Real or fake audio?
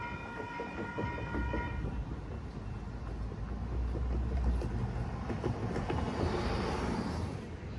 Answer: real